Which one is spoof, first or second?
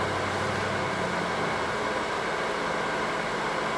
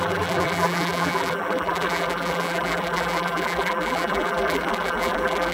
second